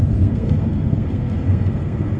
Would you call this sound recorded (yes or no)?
no